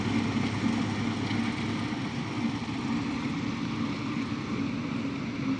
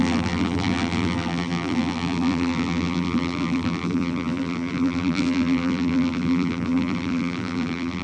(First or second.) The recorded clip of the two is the first